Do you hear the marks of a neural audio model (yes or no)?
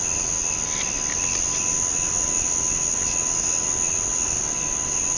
no